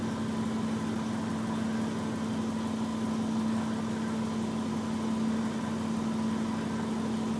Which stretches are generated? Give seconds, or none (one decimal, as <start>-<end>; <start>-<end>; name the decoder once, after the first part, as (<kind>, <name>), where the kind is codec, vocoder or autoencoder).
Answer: none